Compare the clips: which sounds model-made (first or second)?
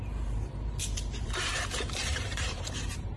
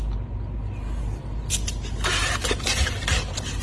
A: first